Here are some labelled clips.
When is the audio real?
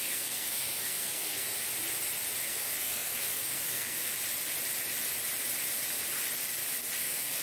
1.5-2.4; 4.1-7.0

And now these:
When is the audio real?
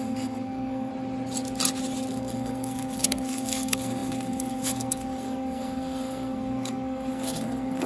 0.9-2.1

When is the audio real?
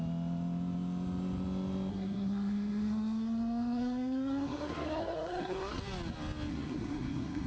0.0-1.9; 5.8-6.5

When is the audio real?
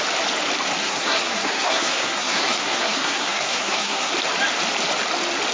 0.0-0.8; 4.1-5.5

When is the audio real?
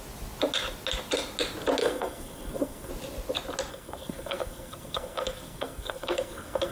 0.0-1.8; 2.9-3.7